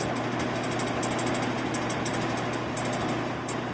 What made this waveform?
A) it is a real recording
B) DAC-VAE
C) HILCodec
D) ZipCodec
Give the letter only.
A